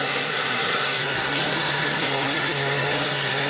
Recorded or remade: remade